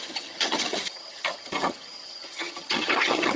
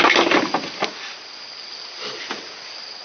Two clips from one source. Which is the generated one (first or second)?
first